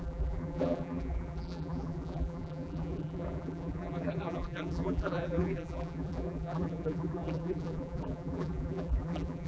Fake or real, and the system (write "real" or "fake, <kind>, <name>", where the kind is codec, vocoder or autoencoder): fake, vocoder, BigVGAN v2